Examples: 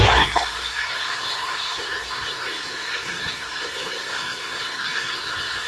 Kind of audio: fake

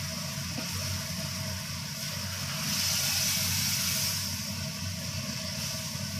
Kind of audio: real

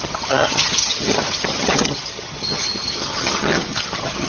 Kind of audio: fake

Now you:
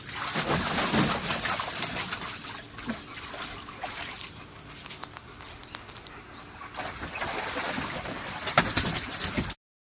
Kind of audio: real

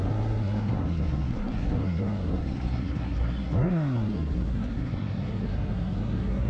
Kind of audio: fake